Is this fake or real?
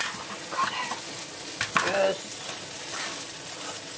real